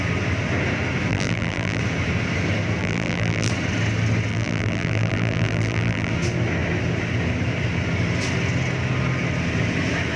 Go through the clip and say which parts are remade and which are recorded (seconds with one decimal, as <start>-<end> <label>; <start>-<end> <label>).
0.0-1.1 recorded; 1.1-1.8 remade; 1.8-2.8 recorded; 2.8-3.5 remade; 3.5-4.3 recorded; 4.3-6.1 remade; 6.1-10.2 recorded